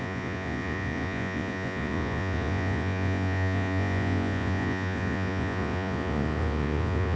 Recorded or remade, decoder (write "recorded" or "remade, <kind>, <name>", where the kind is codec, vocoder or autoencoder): remade, vocoder, Vocos